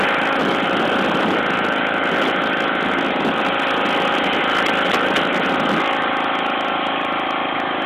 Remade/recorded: recorded